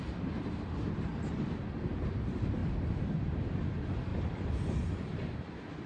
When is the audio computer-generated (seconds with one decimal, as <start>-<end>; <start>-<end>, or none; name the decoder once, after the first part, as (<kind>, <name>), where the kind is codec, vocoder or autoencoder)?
2.6-3.4 (vocoder, BigVGAN v2)